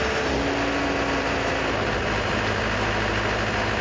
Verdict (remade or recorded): recorded